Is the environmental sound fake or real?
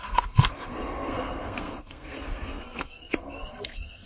fake